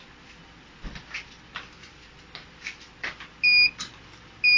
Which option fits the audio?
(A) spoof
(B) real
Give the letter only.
B